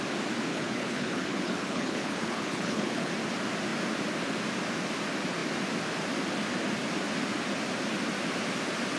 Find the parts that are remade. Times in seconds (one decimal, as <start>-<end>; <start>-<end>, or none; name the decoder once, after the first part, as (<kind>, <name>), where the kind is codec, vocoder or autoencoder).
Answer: 0.5-3.1 (codec, HILCodec)